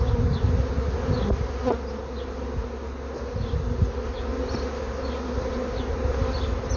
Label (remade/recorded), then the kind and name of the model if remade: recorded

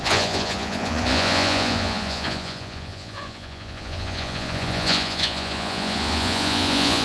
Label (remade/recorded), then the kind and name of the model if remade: remade, vocoder, Vocos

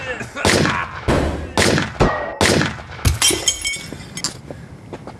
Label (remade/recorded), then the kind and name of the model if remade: recorded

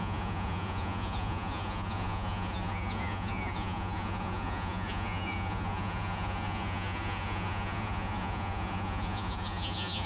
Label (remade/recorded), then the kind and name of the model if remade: remade, vocoder, Vocos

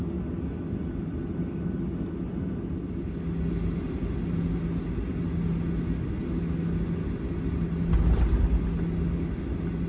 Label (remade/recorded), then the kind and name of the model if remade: recorded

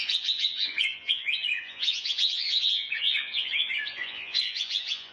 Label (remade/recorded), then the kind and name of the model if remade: remade, vocoder, Vocos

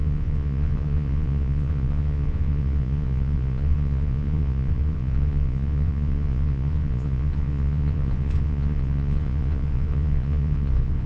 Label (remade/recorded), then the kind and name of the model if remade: remade, vocoder, Vocos